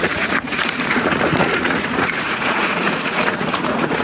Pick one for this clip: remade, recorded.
remade